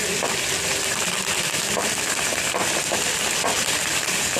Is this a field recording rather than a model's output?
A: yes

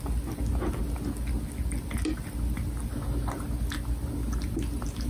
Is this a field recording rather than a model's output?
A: yes